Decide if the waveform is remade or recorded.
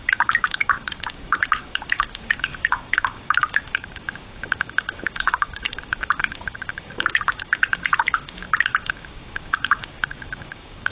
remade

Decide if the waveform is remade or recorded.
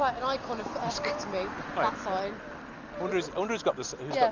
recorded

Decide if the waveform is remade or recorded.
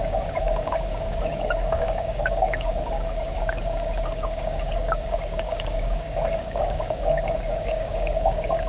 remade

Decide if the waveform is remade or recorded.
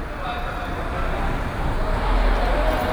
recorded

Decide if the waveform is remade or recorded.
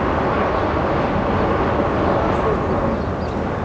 recorded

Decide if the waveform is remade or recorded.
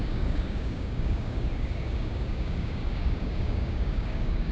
remade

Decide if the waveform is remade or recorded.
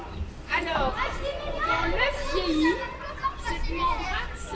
recorded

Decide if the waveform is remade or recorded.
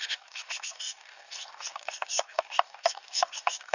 remade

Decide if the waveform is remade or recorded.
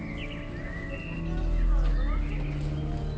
recorded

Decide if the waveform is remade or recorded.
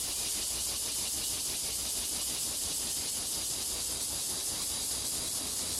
recorded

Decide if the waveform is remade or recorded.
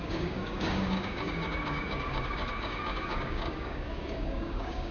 remade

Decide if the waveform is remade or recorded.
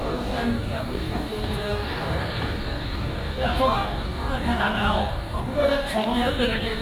remade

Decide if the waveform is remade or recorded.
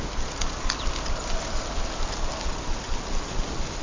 recorded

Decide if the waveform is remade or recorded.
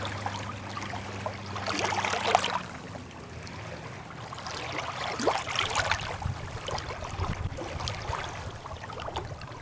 recorded